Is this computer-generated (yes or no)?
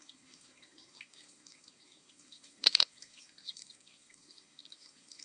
yes